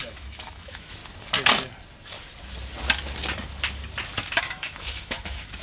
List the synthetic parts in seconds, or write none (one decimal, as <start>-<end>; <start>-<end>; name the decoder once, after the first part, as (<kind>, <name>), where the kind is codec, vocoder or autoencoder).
0.0-1.0 (autoencoder, DAC-VAE); 4.4-5.6